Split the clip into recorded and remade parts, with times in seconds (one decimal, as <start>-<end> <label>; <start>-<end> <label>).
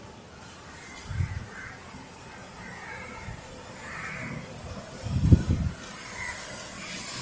0.0-1.0 recorded; 1.0-1.7 remade; 1.7-2.4 recorded; 2.4-5.5 remade; 5.5-7.2 recorded